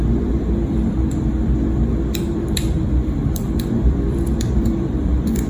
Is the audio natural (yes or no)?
no